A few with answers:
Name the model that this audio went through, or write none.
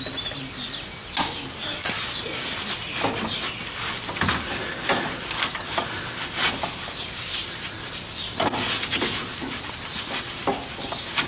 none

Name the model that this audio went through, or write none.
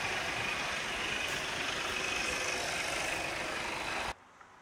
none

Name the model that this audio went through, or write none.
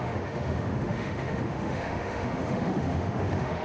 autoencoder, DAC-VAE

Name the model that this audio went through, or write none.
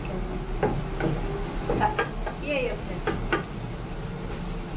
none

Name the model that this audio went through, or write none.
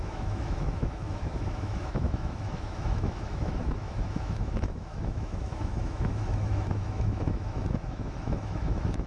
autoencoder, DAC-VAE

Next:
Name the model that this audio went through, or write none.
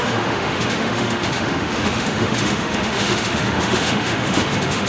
autoencoder, DAC-VAE